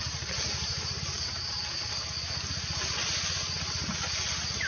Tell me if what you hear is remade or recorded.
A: recorded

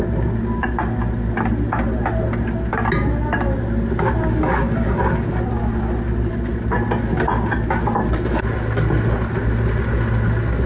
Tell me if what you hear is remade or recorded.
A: recorded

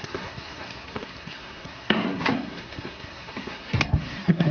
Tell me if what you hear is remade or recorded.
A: remade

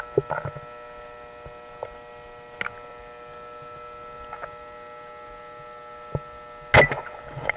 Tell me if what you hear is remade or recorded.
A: recorded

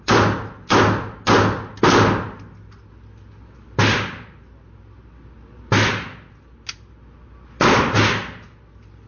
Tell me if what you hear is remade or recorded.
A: recorded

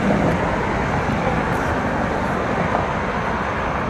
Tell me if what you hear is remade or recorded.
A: recorded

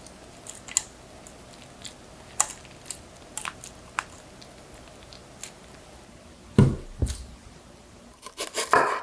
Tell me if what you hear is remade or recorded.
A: recorded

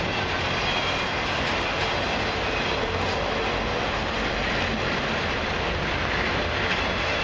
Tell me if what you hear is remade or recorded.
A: recorded